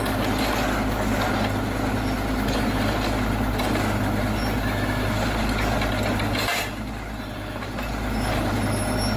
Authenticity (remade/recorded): recorded